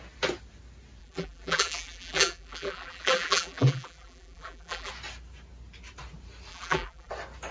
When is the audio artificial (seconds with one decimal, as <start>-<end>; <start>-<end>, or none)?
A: 1.0-4.9; 6.5-7.1